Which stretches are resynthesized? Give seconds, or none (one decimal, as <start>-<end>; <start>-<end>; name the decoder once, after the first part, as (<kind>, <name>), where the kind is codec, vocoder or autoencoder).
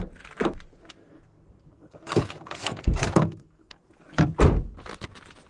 1.0-3.9 (codec, SNAC)